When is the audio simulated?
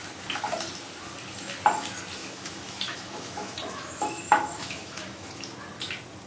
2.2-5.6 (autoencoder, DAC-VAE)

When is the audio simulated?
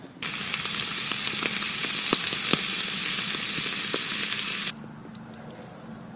2.2-2.8 (autoencoder, DAC-VAE)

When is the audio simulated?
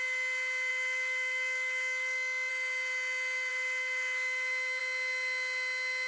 0.7-2.5 (autoencoder, DAC-VAE); 3.5-4.8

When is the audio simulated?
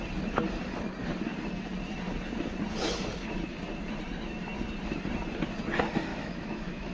6.1-6.9 (autoencoder, DAC-VAE)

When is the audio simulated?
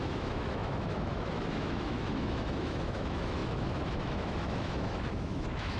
0.0-5.8 (autoencoder, DAC-VAE)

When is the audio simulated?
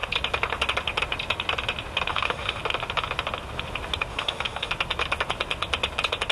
2.1-2.6 (autoencoder, DAC-VAE); 4.1-4.7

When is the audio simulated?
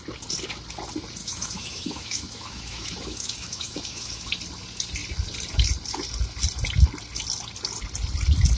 1.2-4.3 (autoencoder, DAC-VAE)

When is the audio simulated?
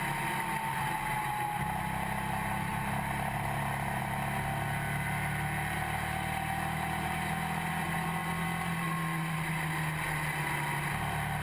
none